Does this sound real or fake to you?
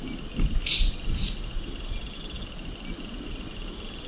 real